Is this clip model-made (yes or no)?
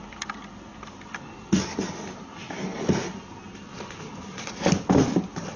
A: no